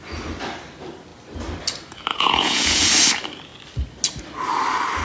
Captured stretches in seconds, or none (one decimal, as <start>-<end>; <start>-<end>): 0.0-2.1; 2.9-5.0